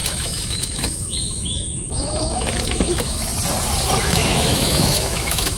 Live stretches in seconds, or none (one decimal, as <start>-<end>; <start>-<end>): 3.3-4.0